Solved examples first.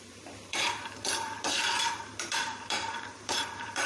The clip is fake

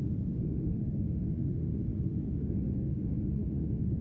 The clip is fake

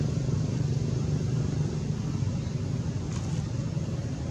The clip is real